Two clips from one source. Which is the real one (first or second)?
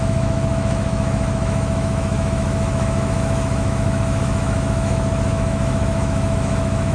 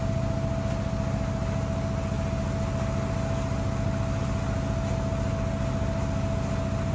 second